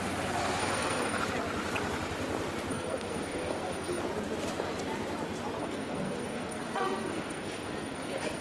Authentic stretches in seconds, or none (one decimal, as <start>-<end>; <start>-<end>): 0.0-0.6; 1.2-2.7; 4.0-5.6